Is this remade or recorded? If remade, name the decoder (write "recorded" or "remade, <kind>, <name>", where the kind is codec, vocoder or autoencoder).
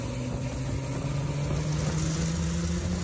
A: recorded